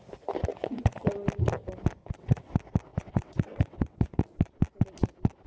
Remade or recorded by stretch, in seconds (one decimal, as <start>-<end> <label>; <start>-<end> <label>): 0.0-0.5 recorded; 0.5-1.1 remade; 1.1-2.0 recorded; 2.0-2.5 remade; 2.5-2.9 recorded; 2.9-4.2 remade; 4.2-5.5 recorded